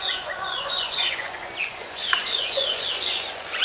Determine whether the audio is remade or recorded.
remade